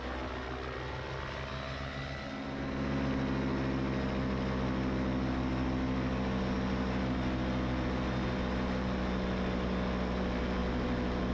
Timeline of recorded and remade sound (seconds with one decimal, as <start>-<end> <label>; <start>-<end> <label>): 0.0-11.3 recorded